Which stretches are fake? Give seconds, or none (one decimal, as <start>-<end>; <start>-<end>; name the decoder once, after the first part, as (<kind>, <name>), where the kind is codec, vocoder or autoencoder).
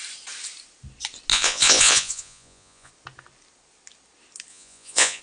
1.3-2.9 (vocoder, Vocos); 4.5-5.2